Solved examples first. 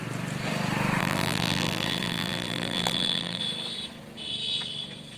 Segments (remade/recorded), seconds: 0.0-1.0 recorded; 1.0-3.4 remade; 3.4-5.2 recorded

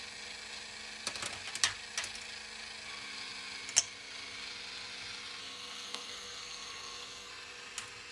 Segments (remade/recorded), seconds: 0.0-5.4 recorded; 5.4-7.3 remade; 7.3-8.1 recorded

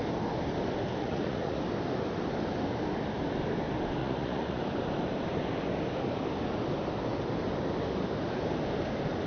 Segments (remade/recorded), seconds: 0.0-1.0 recorded; 1.0-1.6 remade; 1.6-4.0 recorded; 4.0-4.6 remade; 4.6-9.3 recorded

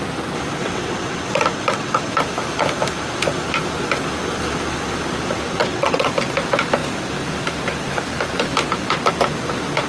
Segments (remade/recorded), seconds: 0.0-0.6 recorded; 0.6-2.1 remade; 2.1-5.6 recorded; 5.6-6.1 remade; 6.1-9.9 recorded

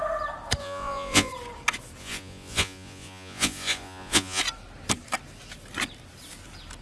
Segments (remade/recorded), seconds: 0.0-0.6 recorded; 0.6-1.3 remade; 1.3-2.0 recorded; 2.0-4.4 remade; 4.4-6.8 recorded

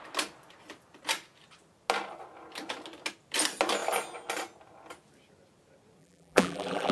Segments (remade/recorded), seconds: 0.0-6.0 recorded; 6.0-6.9 remade

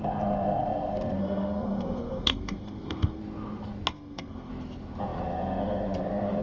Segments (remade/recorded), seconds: 0.0-1.2 recorded; 1.2-3.2 remade; 3.2-3.9 recorded; 3.9-4.5 remade; 4.5-6.4 recorded

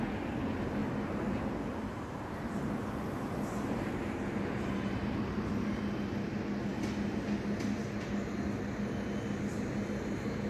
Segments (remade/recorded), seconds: 0.0-0.8 recorded; 0.8-5.5 remade; 5.5-10.5 recorded